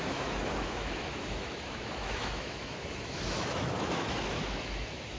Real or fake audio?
fake